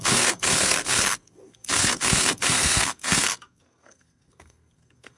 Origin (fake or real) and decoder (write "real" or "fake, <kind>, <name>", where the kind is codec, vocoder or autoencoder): fake, codec, SNAC